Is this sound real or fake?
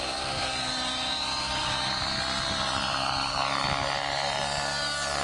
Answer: real